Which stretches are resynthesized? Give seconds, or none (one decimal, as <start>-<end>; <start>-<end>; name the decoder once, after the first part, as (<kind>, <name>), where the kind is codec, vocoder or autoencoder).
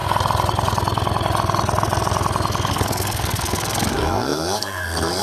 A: 2.7-5.2 (codec, SNAC)